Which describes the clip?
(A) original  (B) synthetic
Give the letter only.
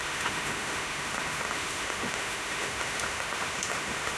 B